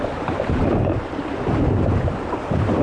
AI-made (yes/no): yes